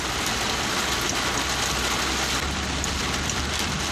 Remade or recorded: recorded